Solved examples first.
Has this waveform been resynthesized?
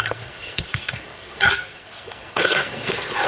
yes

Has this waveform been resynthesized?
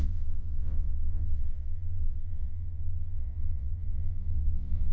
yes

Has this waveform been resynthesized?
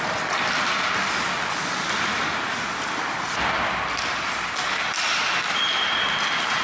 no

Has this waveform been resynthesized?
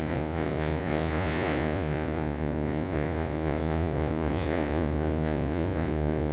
yes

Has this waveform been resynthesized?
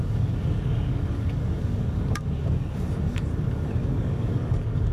yes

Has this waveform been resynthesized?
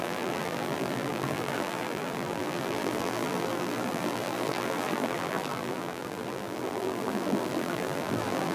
yes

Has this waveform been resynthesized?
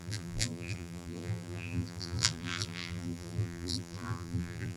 yes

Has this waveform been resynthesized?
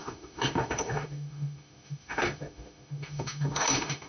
yes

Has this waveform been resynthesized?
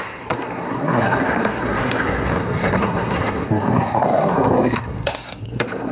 yes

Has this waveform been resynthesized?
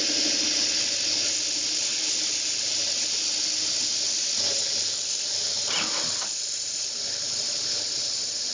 no